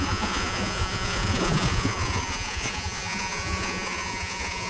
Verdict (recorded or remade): remade